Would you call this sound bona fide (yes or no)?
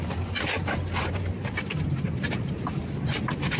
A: yes